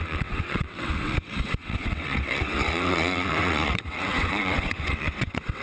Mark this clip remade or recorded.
remade